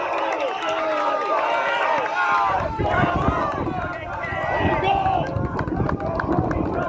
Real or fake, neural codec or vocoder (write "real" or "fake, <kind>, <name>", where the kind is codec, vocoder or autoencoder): real